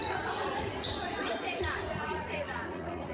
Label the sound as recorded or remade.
remade